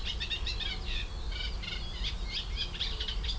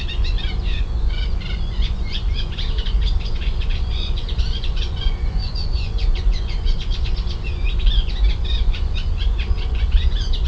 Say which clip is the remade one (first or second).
second